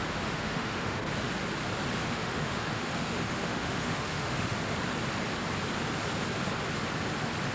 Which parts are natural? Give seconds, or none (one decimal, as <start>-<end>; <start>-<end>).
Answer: 1.0-2.0; 4.8-7.5